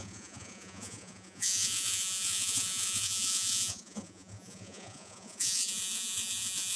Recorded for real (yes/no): no